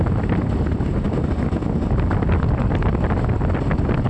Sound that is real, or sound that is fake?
real